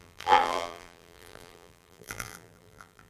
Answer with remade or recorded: remade